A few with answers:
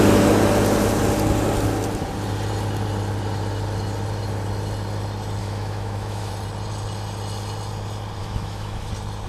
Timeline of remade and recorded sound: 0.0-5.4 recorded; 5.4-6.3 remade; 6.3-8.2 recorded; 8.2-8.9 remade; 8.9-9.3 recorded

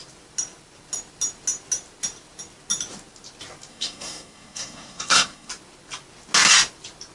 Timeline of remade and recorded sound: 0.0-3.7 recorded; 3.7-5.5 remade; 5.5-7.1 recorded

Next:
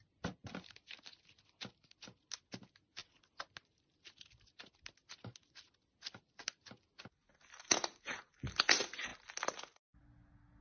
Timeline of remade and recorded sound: 0.0-10.6 recorded